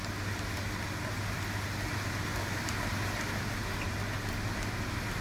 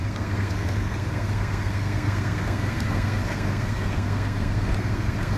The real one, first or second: first